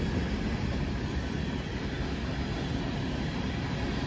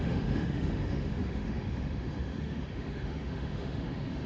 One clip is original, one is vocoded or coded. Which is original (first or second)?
first